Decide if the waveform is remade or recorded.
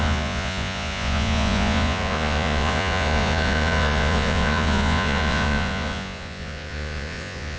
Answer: remade